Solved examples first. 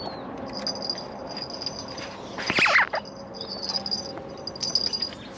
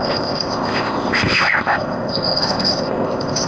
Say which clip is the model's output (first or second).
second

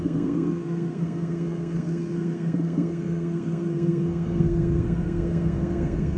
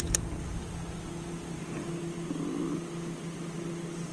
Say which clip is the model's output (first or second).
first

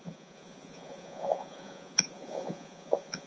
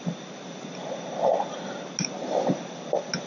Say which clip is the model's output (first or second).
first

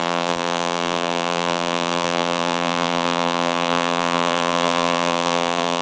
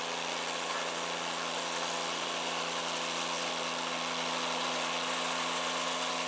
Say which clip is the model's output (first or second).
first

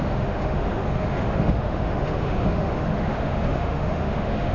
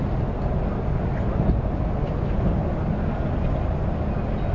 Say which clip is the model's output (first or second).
first